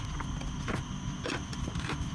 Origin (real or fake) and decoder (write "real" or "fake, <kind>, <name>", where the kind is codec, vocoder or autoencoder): real